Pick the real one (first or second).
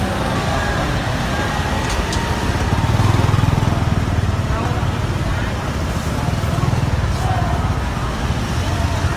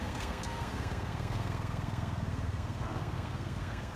first